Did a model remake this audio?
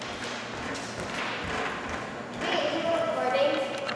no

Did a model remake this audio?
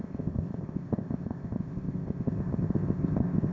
yes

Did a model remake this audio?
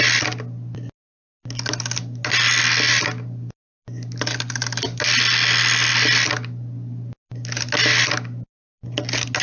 no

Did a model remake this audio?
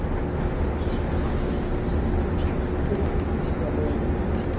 no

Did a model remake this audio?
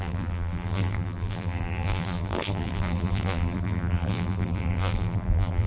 yes